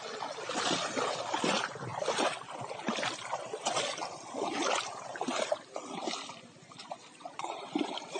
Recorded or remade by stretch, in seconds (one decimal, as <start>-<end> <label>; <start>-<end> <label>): 0.0-6.8 recorded; 6.8-7.6 remade; 7.6-8.2 recorded